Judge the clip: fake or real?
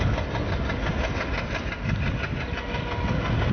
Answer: real